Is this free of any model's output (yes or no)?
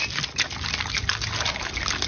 yes